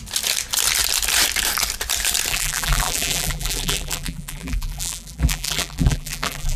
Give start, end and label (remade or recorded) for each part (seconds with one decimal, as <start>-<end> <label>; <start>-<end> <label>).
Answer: 0.0-2.3 recorded; 2.3-6.6 remade